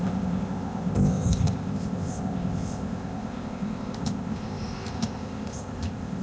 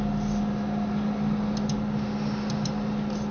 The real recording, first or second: second